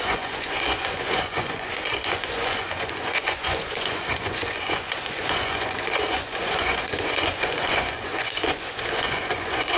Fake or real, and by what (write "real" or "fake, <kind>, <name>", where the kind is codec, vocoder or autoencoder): fake, vocoder, Vocos